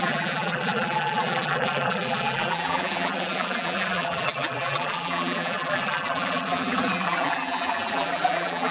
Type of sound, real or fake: fake